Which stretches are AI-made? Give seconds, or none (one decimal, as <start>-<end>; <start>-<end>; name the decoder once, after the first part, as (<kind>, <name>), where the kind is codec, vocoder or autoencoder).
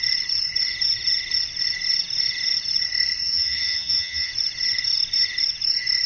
3.2-4.3 (vocoder, HiFi-GAN)